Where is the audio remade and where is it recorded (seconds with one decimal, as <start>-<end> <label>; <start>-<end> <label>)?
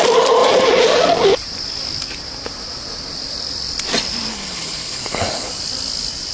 0.0-4.3 recorded; 4.3-5.5 remade; 5.5-6.3 recorded